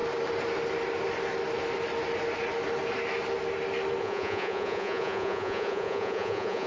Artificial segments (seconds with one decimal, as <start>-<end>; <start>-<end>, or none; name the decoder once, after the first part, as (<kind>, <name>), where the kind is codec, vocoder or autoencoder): 4.0-6.7 (vocoder, Vocos)